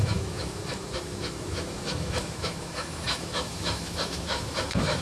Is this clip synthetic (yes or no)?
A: yes